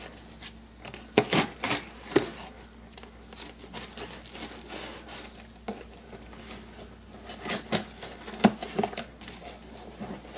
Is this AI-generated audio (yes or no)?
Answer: no